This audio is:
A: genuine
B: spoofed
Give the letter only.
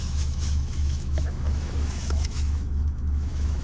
B